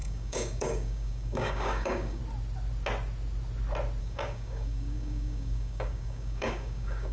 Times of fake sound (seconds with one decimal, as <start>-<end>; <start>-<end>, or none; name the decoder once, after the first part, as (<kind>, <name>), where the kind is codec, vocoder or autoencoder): 0.0-2.2 (codec, DAC); 4.0-7.1